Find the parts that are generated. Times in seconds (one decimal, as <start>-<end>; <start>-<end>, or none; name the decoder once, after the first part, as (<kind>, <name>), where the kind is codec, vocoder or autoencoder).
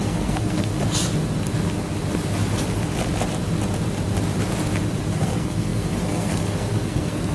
0.0-0.7 (codec, SNAC); 5.1-7.3